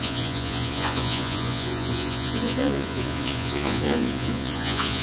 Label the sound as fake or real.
fake